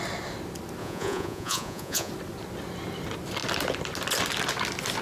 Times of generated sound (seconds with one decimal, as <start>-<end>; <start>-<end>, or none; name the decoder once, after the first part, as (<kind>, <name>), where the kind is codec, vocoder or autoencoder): 0.8-2.1 (vocoder, Vocos)